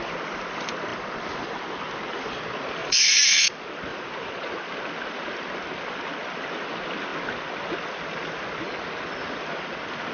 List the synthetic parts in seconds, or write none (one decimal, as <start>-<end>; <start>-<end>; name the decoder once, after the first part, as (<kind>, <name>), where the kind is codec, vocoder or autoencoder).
2.8-3.5 (vocoder, Vocos); 3.9-4.5